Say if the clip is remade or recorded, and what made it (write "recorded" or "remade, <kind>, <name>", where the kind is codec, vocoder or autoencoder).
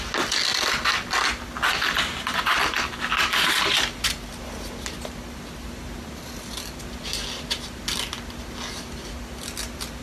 recorded